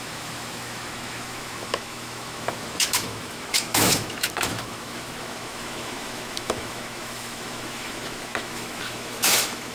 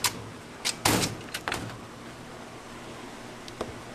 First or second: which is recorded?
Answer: second